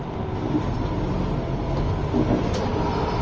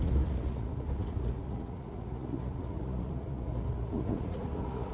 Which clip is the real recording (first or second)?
first